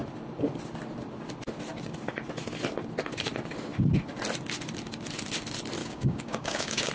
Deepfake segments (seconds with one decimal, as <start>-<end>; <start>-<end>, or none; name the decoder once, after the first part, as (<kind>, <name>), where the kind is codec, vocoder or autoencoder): 5.8-6.9 (codec, DAC)